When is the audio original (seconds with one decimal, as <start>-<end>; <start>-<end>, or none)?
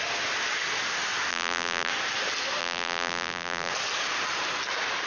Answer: 0.0-1.3; 1.9-2.6; 3.7-5.1